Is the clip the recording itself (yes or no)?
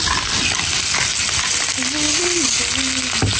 yes